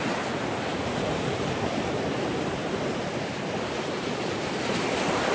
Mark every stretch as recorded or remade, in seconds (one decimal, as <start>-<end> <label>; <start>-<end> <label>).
0.0-5.3 recorded